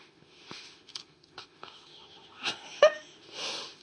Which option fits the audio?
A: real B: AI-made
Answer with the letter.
B